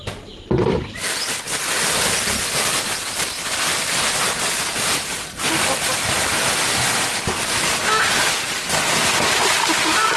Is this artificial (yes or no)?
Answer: no